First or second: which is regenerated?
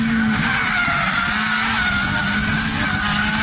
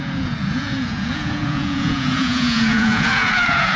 second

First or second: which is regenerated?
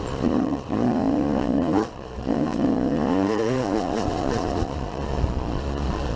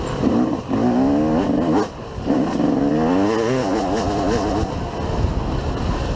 first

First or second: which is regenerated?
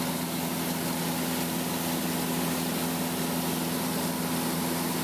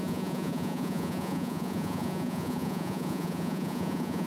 second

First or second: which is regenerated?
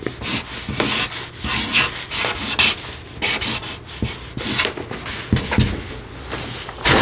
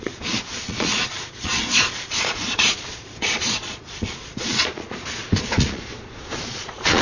second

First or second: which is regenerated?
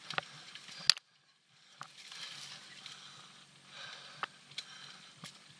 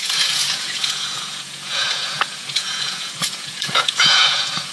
second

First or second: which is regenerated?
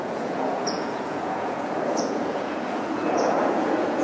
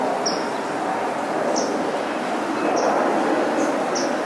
first